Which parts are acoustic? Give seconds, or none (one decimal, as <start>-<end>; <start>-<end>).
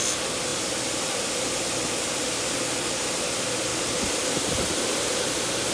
0.0-0.5; 1.6-3.7